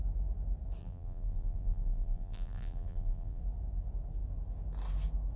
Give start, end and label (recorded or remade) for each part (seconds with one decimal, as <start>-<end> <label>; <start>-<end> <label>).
0.0-0.8 recorded; 0.8-3.4 remade; 3.4-5.4 recorded